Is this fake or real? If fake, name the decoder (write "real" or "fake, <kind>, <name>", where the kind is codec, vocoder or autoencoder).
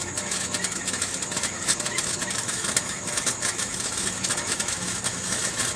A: fake, autoencoder, DAC-VAE